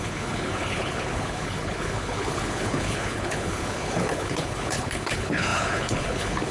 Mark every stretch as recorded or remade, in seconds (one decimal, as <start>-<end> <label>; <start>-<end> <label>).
0.0-6.5 remade